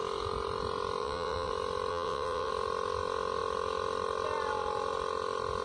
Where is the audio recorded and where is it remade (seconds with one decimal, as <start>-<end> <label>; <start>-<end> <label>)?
0.0-1.0 recorded; 1.0-1.5 remade; 1.5-1.9 recorded; 1.9-2.5 remade; 2.5-5.6 recorded